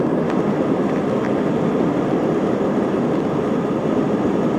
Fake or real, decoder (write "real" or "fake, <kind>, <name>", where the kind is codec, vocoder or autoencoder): real